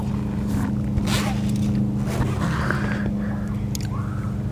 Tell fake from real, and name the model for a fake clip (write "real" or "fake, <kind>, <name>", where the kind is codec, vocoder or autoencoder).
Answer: real